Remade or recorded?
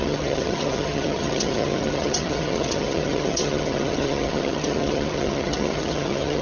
remade